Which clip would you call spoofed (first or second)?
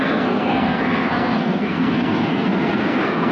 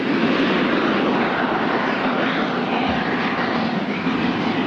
first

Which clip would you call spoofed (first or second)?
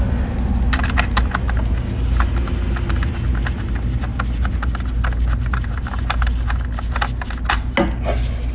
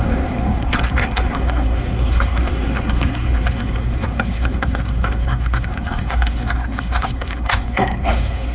second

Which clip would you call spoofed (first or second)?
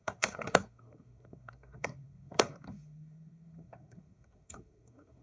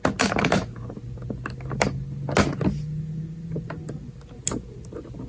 first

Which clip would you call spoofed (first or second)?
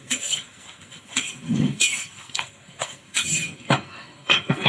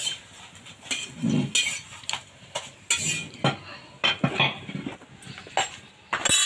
first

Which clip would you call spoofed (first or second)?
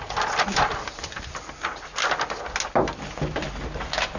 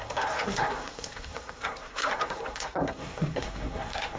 second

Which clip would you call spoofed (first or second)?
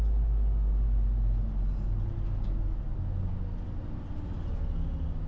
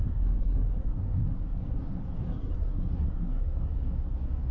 second